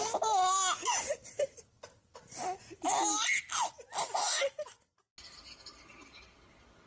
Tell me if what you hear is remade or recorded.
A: recorded